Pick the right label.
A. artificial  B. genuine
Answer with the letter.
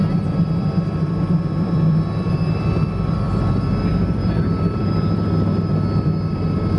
A